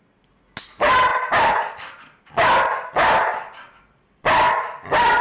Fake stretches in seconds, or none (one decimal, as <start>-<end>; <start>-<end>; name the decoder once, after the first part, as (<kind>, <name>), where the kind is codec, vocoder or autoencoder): none